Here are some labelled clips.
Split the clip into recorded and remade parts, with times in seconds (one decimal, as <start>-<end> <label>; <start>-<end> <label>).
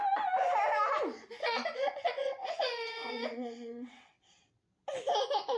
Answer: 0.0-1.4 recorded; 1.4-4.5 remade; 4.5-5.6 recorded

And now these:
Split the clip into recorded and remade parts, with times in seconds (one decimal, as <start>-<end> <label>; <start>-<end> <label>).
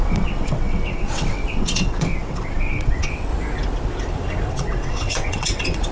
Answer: 0.0-3.3 remade; 3.3-4.5 recorded; 4.5-5.9 remade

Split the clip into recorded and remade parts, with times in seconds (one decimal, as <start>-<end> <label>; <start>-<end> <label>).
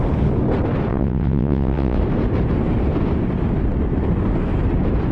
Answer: 0.0-0.9 recorded; 0.9-2.0 remade; 2.0-5.1 recorded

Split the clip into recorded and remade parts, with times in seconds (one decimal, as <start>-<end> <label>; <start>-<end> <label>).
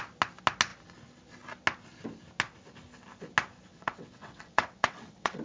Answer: 0.0-3.7 recorded; 3.7-5.4 remade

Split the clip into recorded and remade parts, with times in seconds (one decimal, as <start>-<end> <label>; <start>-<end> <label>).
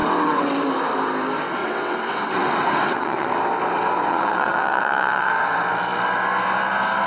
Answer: 0.0-0.5 remade; 0.5-1.6 recorded; 1.6-3.3 remade; 3.3-4.1 recorded; 4.1-5.3 remade; 5.3-7.1 recorded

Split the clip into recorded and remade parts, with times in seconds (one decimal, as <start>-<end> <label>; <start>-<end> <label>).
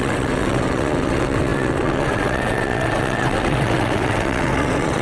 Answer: 0.0-5.0 remade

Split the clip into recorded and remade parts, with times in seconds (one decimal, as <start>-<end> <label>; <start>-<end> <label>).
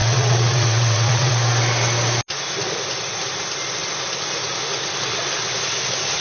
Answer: 0.0-1.3 remade; 1.3-6.2 recorded